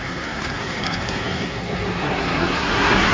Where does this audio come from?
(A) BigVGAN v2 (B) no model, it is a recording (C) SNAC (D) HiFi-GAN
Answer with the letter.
C